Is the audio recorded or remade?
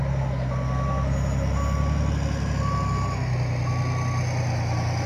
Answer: recorded